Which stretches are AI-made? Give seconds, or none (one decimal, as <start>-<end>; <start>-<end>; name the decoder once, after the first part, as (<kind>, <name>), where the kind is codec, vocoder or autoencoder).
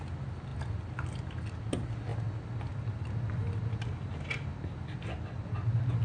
none